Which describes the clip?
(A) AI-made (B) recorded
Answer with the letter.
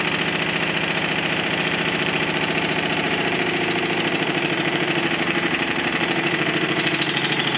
A